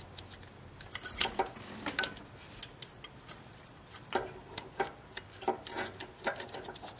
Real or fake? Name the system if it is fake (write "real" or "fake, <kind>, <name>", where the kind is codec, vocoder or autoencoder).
real